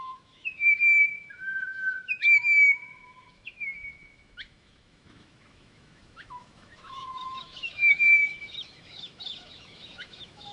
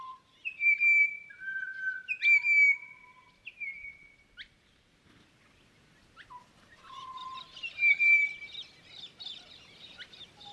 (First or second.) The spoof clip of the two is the first